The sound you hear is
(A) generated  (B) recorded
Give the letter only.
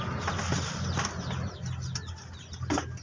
B